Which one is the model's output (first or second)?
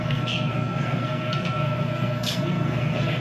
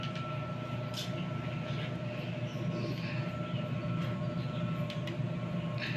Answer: first